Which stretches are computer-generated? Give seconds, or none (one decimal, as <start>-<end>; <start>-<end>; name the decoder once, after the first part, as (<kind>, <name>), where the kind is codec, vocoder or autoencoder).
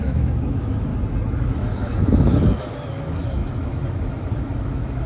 0.0-0.9 (autoencoder, DAC-VAE); 1.4-5.1